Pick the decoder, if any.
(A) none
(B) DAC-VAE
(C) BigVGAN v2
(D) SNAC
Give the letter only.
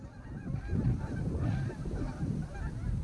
C